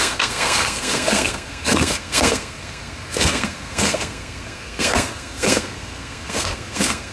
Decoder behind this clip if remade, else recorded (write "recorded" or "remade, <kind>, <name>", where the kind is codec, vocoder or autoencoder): remade, codec, SNAC